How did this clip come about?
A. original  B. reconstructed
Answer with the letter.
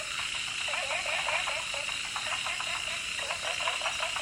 B